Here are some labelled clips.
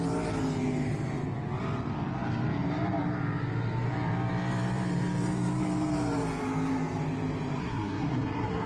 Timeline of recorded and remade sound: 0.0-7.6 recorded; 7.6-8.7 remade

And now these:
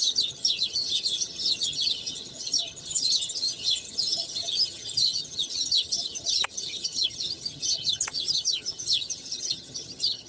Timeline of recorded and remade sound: 0.0-10.3 remade

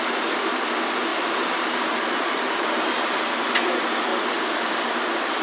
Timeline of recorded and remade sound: 0.0-1.1 recorded; 1.1-2.9 remade; 2.9-4.1 recorded; 4.1-5.4 remade

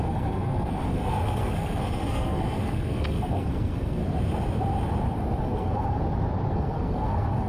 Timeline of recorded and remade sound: 0.0-4.0 remade; 4.0-5.4 recorded; 5.4-6.0 remade; 6.0-6.5 recorded; 6.5-7.5 remade

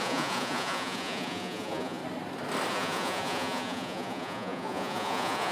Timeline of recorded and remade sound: 0.0-2.0 remade; 2.0-2.7 recorded; 2.7-5.5 remade

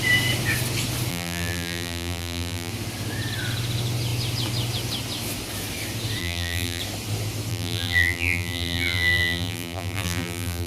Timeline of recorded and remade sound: 0.0-1.1 recorded; 1.1-2.7 remade; 2.7-6.2 recorded; 6.2-6.8 remade; 6.8-7.5 recorded; 7.5-10.7 remade

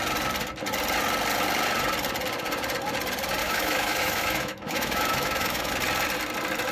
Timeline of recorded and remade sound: 0.0-3.4 recorded; 3.4-5.7 remade; 5.7-6.7 recorded

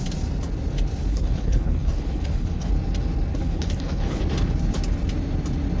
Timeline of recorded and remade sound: 0.0-1.1 recorded; 1.1-2.7 remade; 2.7-3.3 recorded; 3.3-4.2 remade; 4.2-5.8 recorded